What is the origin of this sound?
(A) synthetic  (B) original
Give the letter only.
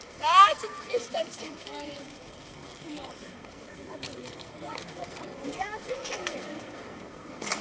A